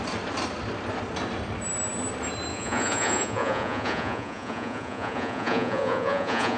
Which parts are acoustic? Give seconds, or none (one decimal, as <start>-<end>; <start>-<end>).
0.0-2.5